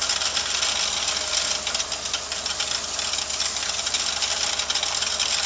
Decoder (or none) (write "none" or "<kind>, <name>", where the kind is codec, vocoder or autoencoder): none